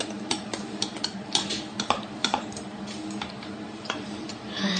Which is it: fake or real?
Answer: fake